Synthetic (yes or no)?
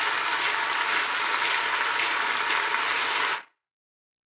no